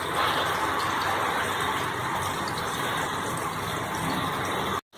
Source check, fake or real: real